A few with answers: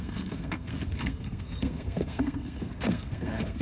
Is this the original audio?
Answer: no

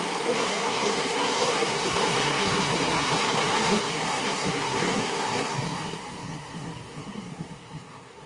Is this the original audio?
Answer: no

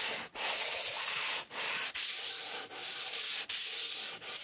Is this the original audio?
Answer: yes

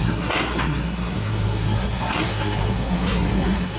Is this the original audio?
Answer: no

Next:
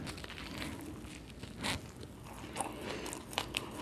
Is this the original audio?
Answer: yes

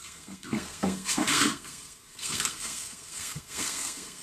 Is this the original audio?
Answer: no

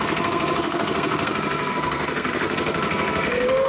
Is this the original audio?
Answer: no